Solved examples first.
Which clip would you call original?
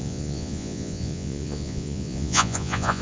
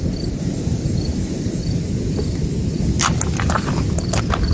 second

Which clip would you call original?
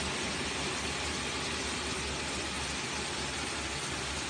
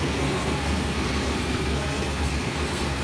first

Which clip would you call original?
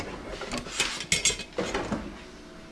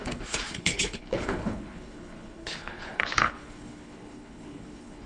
first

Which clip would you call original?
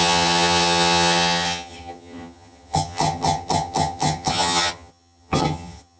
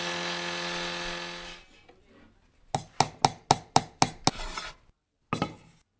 second